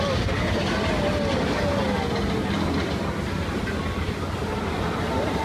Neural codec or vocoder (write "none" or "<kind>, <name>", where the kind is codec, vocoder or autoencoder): none